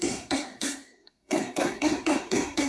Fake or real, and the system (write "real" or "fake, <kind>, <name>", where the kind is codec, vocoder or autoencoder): fake, codec, SNAC